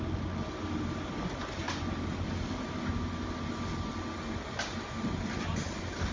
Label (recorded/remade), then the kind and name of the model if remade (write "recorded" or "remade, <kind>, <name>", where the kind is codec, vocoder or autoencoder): recorded